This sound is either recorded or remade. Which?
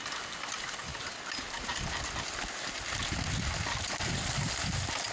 recorded